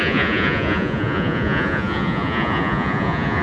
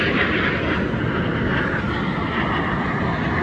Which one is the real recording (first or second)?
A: second